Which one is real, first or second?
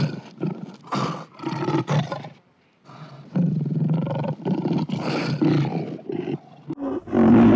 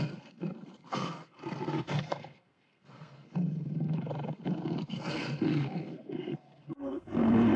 first